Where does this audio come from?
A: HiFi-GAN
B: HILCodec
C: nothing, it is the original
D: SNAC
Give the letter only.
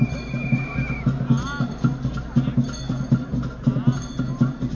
C